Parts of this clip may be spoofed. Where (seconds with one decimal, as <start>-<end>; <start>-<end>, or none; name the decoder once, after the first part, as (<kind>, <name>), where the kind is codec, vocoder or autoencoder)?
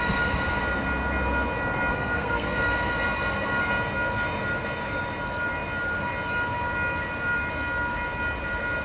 1.9-2.6 (codec, SNAC)